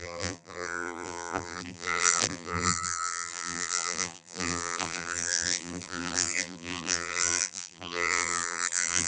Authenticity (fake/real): fake